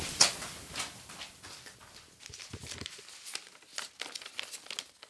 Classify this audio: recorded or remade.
recorded